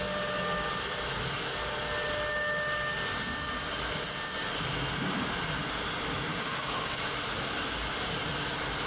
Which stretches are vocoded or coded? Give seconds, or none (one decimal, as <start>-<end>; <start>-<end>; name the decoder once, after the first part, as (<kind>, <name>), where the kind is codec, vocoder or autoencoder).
6.3-7.0 (codec, DAC)